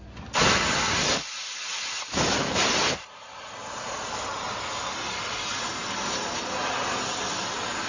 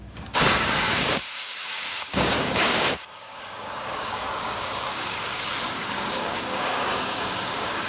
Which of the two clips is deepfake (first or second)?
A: second